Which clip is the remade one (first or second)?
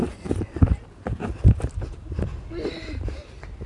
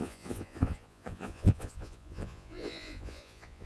second